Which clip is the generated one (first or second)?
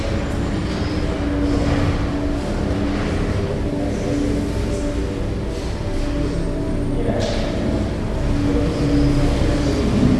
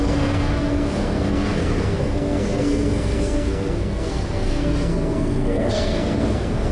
second